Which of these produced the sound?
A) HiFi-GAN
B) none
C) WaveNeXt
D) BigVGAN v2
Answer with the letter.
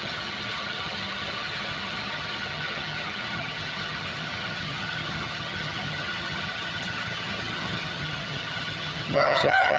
A